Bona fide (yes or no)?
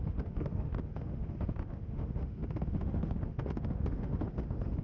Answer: no